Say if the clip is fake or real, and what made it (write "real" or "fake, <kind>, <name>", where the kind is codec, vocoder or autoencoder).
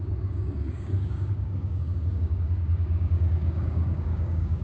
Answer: fake, codec, DAC